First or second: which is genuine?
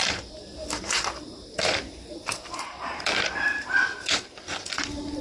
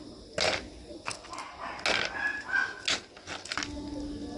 second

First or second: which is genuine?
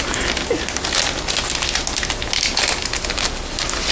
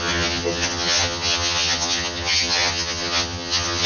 first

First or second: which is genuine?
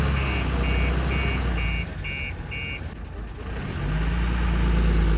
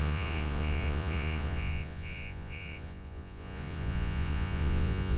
first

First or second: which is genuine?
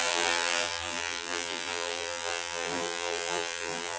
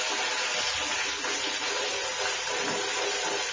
second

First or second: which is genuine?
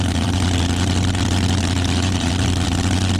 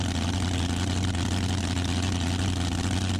second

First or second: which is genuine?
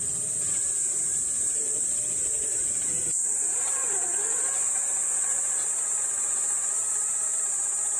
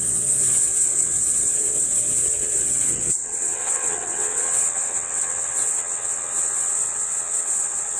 first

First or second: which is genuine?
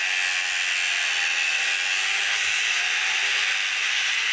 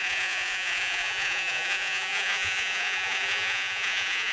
first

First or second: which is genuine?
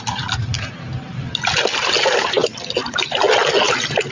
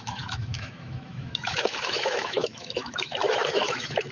first